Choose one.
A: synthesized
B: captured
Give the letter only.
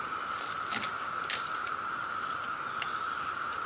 B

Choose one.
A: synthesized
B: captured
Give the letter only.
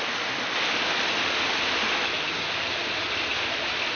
B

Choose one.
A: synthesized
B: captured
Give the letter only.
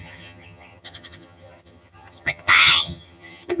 A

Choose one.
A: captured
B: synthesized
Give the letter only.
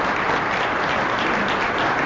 A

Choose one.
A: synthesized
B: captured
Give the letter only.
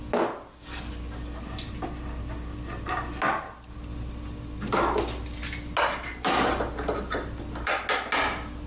B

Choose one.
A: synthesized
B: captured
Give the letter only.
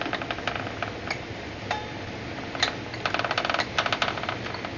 B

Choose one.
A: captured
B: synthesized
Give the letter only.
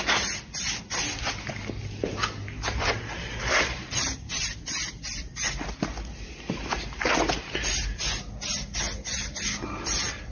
A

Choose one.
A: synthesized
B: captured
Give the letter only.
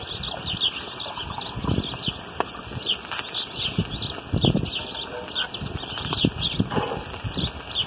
B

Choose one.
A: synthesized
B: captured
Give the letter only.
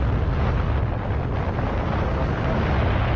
B